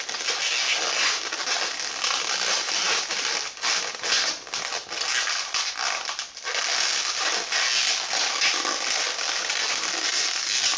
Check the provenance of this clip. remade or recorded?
recorded